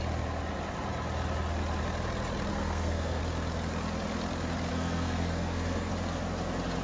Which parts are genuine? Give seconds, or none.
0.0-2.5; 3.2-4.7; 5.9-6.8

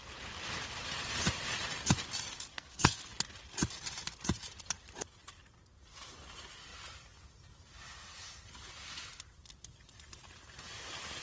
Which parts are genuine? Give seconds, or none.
0.0-2.5; 3.1-11.2

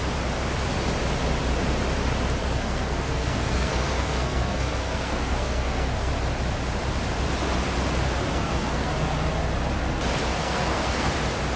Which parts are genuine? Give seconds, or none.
0.0-2.4; 6.1-8.3; 8.9-10.4; 11.1-11.6

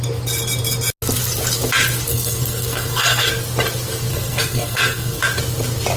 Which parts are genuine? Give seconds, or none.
0.0-2.1; 3.3-4.1; 5.2-6.0